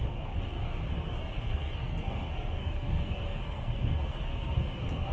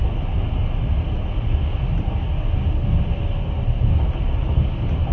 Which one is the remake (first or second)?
first